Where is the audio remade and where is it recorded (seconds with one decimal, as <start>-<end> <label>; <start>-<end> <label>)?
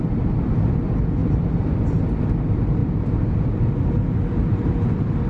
0.0-0.7 remade; 0.7-1.2 recorded; 1.2-1.8 remade; 1.8-2.8 recorded; 2.8-4.3 remade; 4.3-5.3 recorded